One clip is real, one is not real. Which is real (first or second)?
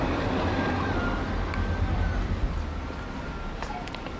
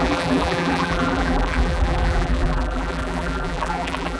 first